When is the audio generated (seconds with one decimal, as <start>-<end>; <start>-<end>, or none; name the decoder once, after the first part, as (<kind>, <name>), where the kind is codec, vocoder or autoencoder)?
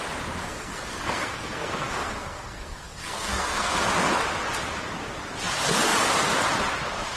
0.4-3.9 (codec, SNAC)